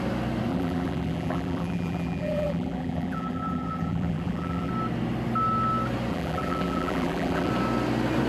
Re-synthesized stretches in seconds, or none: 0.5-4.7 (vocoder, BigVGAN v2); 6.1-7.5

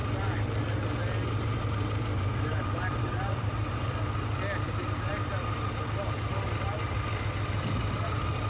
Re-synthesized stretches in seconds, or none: 0.0-3.9 (vocoder, BigVGAN v2)

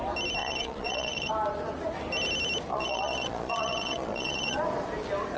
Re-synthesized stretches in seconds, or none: 0.4-1.3 (vocoder, Vocos); 2.7-4.6

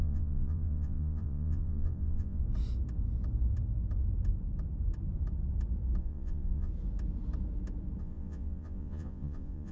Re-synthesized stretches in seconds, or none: 0.0-2.4 (vocoder, Vocos); 6.0-6.7; 8.0-9.7

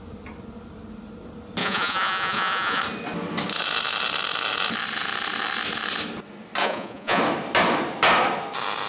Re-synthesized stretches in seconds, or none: 1.6-2.8 (vocoder, Vocos); 6.6-7.2

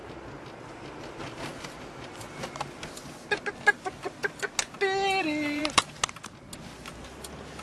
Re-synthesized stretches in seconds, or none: none

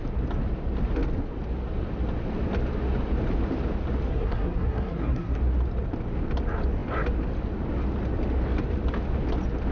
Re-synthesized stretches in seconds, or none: 4.1-5.4 (codec, SNAC)

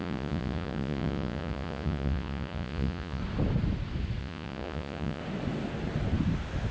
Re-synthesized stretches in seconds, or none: 0.0-3.2 (vocoder, Vocos); 4.2-5.2